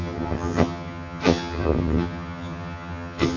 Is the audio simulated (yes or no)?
yes